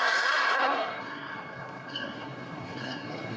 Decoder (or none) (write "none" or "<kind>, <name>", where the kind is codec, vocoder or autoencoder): codec, SNAC